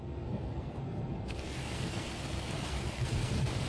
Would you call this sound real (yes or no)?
no